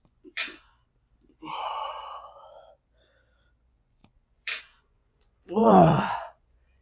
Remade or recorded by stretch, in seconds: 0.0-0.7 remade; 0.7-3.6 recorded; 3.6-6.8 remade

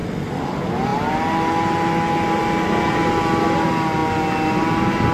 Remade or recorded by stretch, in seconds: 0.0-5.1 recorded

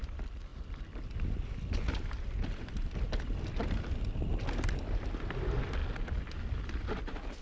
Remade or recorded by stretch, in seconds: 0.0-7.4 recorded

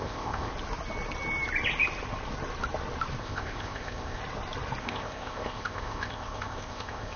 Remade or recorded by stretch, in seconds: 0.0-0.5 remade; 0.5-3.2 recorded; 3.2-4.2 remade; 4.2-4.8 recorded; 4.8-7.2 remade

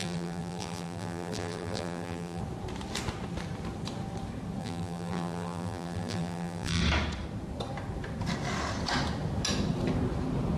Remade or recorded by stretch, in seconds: 0.0-2.4 remade; 2.4-4.6 recorded; 4.6-6.8 remade; 6.8-10.6 recorded